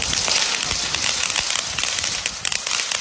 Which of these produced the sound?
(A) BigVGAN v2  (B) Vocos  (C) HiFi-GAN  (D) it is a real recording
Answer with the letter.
D